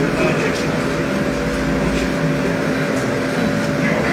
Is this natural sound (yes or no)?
yes